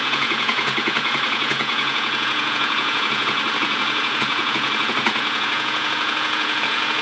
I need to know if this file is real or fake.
fake